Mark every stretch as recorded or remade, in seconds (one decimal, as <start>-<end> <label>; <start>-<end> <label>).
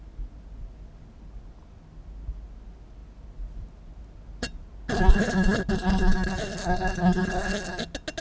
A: 0.0-8.2 recorded